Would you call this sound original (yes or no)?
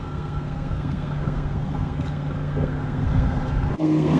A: no